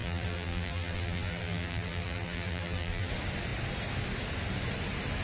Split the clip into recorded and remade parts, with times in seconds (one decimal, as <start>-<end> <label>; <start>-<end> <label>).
0.0-3.1 remade; 3.1-5.2 recorded